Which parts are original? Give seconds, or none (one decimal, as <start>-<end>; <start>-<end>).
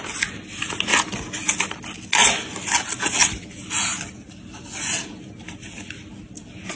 0.0-6.8